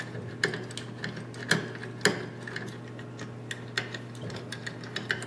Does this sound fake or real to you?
real